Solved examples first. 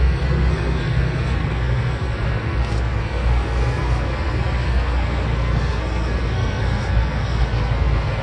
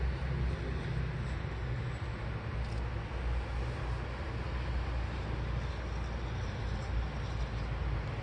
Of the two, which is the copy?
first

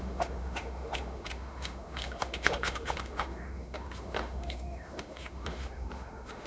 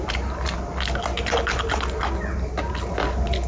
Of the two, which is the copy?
first